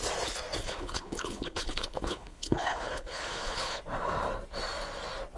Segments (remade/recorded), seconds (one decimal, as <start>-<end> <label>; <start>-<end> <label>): 0.0-0.6 recorded; 0.6-3.8 remade; 3.8-5.4 recorded